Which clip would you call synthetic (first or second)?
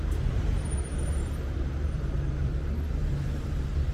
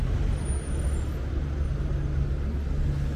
first